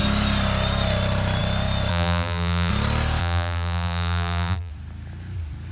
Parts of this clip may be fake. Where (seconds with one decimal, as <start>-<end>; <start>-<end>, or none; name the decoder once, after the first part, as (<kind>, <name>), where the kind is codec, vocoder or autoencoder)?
1.9-2.7 (vocoder, BigVGAN v2); 3.2-4.7